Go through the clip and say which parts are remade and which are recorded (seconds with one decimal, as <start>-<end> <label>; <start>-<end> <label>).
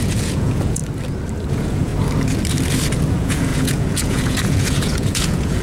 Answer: 0.0-0.8 remade; 0.8-1.5 recorded; 1.5-1.9 remade; 1.9-3.1 recorded; 3.1-5.6 remade